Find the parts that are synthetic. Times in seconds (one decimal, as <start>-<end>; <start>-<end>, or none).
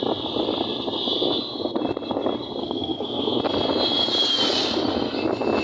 2.6-3.4